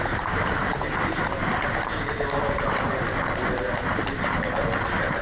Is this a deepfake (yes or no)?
no